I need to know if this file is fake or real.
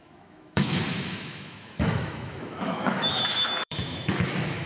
fake